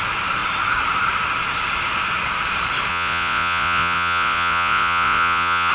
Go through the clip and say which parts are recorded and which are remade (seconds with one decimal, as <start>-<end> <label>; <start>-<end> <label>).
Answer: 0.0-2.9 recorded; 2.9-5.7 remade